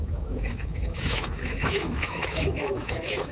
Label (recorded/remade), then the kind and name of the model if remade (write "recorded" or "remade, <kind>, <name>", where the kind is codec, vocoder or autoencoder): remade, autoencoder, DAC-VAE